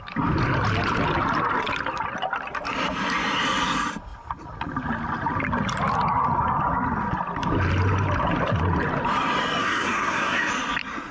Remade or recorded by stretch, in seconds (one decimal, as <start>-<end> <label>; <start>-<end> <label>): 0.0-9.6 recorded; 9.6-10.5 remade; 10.5-11.1 recorded